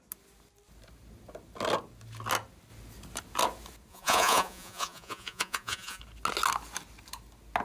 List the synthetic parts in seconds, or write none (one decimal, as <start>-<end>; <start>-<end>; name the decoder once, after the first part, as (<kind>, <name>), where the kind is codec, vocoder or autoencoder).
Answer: 3.9-6.0 (vocoder, Vocos)